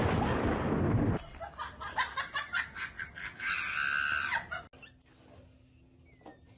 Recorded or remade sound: recorded